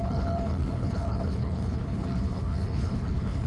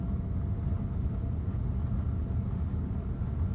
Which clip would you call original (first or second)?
second